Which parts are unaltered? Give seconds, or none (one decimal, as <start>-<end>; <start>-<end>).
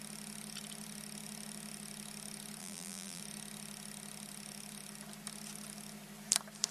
0.0-2.6; 3.2-6.7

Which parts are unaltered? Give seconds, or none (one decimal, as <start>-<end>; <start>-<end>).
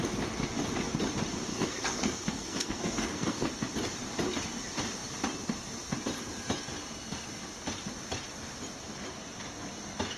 0.0-1.5; 3.5-10.2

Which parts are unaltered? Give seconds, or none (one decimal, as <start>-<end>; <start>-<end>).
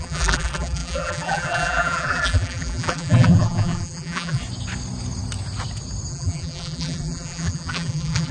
4.4-6.1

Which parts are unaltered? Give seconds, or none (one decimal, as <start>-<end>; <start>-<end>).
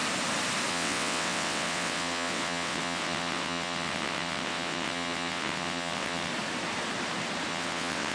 0.0-0.7; 6.3-7.5